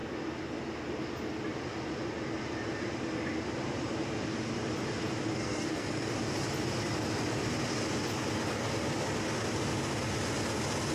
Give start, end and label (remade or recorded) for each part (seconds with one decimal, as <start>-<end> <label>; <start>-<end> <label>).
0.0-5.3 recorded; 5.3-6.1 remade; 6.1-10.9 recorded